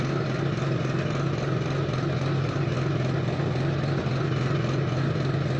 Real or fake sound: real